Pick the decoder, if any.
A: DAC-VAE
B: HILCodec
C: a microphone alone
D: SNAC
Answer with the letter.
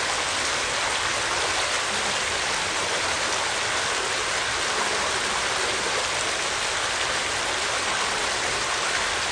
C